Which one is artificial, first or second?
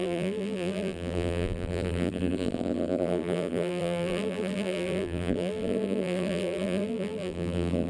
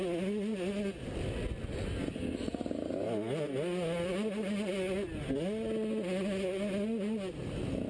first